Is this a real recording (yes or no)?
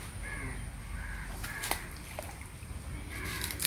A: yes